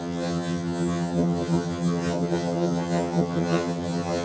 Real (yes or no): no